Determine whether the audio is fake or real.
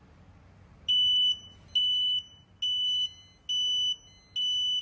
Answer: real